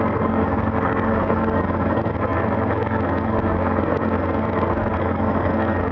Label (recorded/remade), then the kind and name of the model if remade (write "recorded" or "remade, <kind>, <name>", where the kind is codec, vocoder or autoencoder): remade, codec, SNAC